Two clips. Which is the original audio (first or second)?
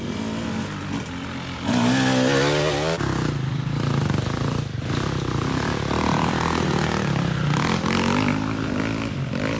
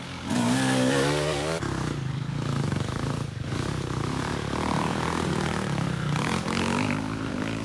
first